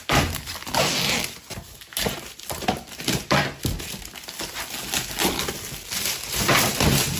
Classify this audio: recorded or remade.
recorded